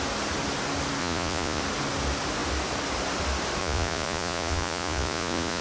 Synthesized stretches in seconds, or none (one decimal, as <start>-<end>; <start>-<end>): 1.0-1.6; 3.6-5.6